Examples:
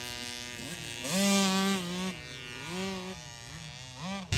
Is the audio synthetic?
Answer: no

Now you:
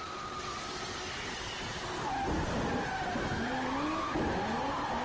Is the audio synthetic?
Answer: no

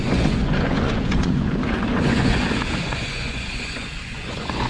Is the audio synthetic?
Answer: yes